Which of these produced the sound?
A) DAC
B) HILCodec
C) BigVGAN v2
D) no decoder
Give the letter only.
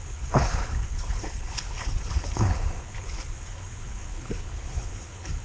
B